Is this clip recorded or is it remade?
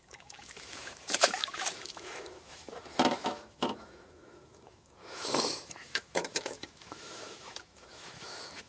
remade